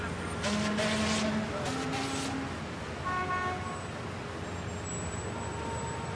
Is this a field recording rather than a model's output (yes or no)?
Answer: yes